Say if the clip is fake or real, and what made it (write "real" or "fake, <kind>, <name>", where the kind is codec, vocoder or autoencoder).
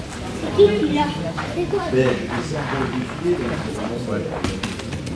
real